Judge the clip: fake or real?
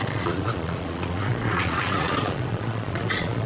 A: fake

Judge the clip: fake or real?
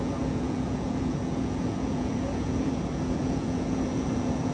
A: fake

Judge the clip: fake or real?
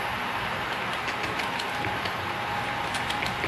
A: real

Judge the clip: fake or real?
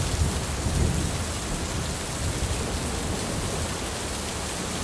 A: real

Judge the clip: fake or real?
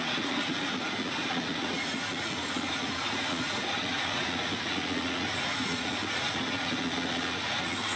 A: fake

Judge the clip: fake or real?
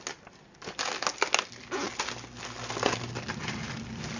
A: real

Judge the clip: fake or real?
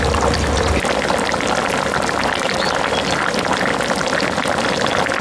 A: real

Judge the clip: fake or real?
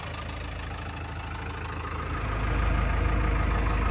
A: real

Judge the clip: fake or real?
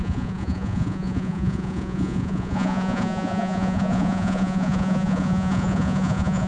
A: fake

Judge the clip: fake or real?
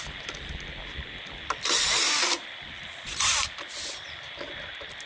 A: real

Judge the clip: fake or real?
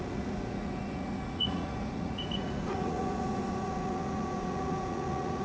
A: fake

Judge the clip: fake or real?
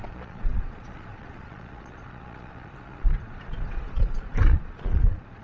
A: fake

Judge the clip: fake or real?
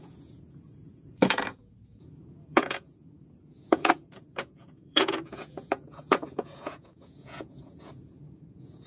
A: fake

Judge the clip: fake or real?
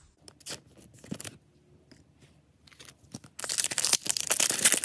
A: real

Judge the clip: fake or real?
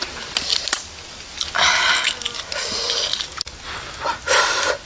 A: real